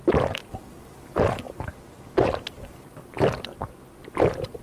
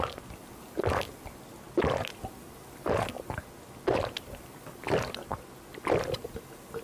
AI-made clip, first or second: first